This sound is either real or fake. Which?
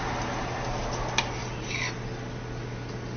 real